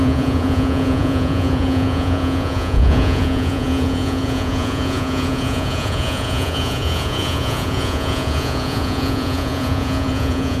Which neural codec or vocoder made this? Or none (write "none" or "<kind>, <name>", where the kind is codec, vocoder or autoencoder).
vocoder, Vocos